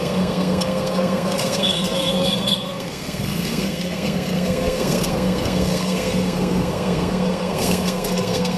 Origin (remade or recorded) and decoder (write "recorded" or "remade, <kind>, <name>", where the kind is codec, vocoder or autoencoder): remade, codec, SNAC